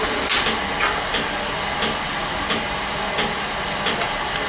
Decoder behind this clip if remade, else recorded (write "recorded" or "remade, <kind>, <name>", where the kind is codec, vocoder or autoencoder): recorded